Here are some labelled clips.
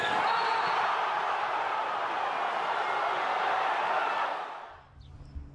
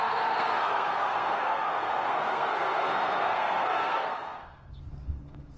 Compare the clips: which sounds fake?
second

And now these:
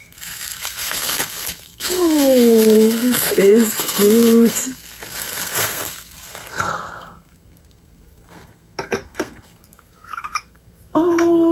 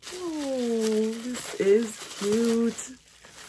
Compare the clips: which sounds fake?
first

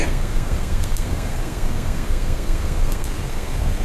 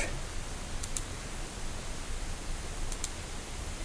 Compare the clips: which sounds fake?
first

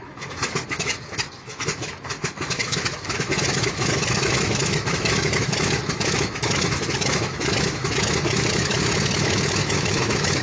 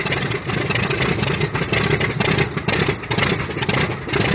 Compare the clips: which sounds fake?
first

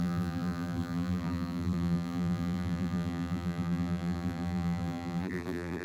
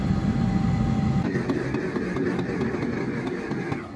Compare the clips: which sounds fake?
first